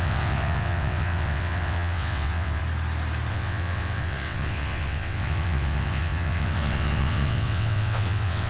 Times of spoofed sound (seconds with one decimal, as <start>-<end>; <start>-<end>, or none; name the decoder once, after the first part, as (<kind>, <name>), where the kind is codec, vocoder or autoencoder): 0.0-2.6 (vocoder, WaveNeXt); 3.3-8.5